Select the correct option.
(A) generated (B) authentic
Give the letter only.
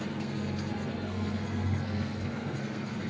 A